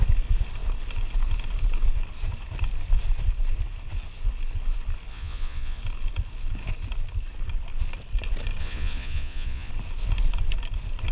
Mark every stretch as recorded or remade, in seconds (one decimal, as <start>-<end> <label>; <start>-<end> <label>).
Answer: 0.0-5.1 recorded; 5.1-5.8 remade; 5.8-8.6 recorded; 8.6-9.7 remade; 9.7-11.1 recorded